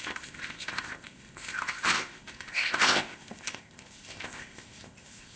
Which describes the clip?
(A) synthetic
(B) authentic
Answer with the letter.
A